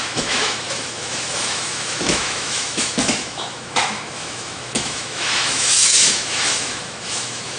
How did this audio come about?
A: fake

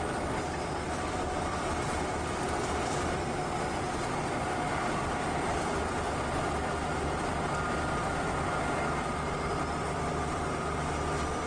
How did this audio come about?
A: fake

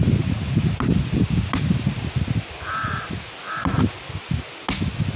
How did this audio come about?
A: real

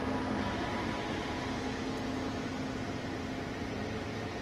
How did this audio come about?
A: real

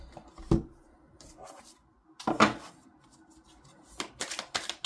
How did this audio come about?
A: real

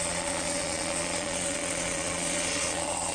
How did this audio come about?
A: fake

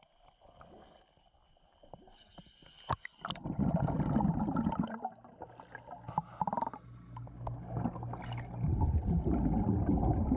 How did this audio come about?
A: real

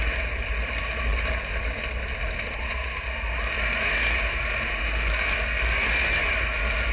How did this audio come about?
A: real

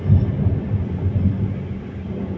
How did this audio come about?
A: real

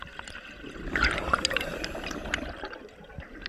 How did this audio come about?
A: real